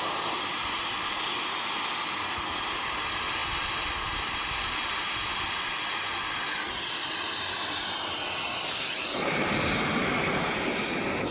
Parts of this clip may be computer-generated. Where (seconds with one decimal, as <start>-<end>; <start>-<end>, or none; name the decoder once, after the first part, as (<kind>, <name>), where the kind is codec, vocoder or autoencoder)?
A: none